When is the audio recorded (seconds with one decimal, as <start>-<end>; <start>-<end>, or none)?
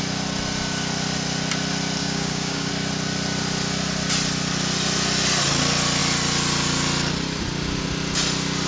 0.0-2.0; 2.7-8.7